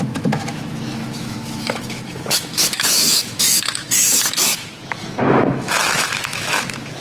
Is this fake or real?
fake